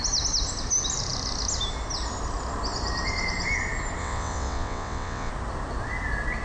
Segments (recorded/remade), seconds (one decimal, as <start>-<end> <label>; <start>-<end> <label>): 0.0-4.0 recorded; 4.0-5.3 remade; 5.3-6.4 recorded